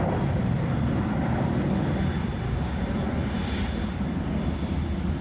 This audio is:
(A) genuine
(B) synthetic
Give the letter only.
A